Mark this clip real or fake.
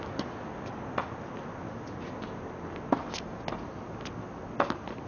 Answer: real